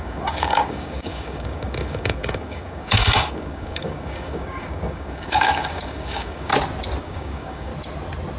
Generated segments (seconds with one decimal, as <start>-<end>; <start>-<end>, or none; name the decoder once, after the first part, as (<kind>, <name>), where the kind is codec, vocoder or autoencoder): 0.0-6.5 (codec, DAC); 7.0-7.7